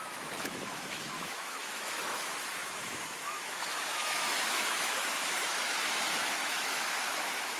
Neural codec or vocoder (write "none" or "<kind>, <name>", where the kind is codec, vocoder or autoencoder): autoencoder, DAC-VAE